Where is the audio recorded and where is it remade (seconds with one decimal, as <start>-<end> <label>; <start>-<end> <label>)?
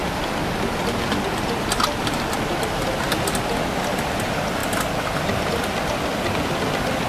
0.0-7.1 recorded